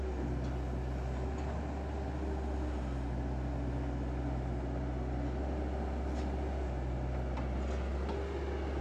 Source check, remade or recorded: recorded